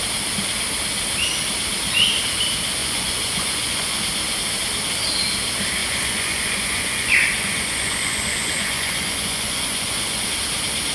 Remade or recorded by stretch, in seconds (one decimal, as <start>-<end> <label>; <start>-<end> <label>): 0.0-2.8 recorded; 2.8-4.0 remade; 4.0-5.8 recorded; 5.8-10.2 remade; 10.2-10.9 recorded